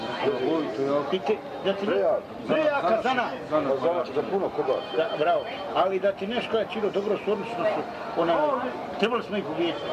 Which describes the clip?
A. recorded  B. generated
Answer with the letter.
A